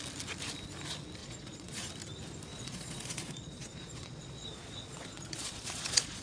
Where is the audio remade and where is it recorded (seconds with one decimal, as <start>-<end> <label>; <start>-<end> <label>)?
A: 0.0-1.2 recorded; 1.2-1.9 remade; 1.9-2.5 recorded; 2.5-6.2 remade